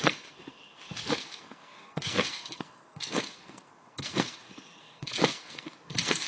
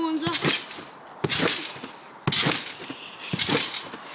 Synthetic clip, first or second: first